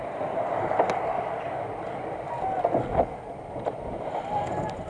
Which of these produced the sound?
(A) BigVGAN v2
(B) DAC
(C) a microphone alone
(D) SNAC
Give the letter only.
C